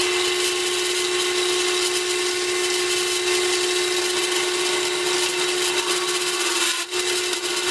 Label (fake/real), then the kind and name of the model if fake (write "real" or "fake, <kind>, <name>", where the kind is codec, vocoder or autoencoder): real